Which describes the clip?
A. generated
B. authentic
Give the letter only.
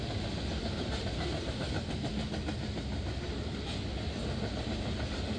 B